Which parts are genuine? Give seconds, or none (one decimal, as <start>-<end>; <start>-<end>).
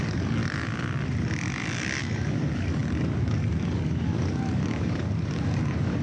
0.4-2.0